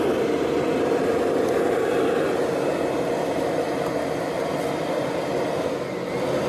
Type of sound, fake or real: real